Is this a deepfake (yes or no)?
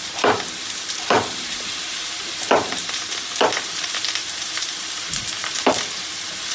yes